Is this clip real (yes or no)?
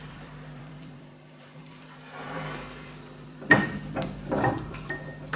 no